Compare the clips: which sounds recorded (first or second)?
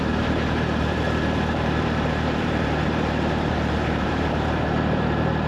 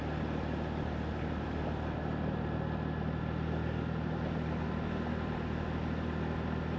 second